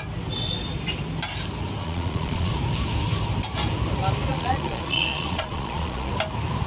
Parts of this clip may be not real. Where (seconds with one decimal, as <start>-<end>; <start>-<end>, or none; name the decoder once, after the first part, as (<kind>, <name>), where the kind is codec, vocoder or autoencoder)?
1.8-2.5 (vocoder, Vocos); 4.3-6.1